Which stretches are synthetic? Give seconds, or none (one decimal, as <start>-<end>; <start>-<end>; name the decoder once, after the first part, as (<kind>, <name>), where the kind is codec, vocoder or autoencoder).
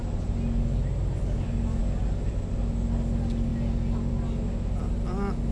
none